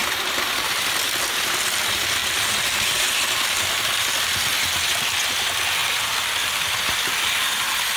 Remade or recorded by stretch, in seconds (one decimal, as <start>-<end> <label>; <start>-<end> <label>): 0.0-8.0 recorded